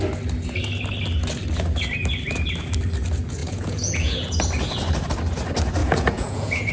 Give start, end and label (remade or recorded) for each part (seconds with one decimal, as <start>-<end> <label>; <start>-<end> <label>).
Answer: 0.0-3.4 recorded; 3.4-4.3 remade; 4.3-5.8 recorded; 5.8-6.7 remade